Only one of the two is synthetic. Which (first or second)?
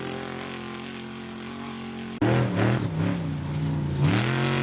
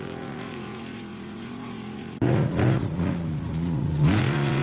second